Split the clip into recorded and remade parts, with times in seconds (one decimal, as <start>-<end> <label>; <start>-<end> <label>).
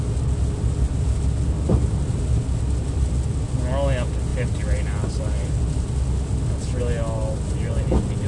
0.0-8.3 recorded